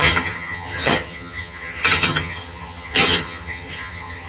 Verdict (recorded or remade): remade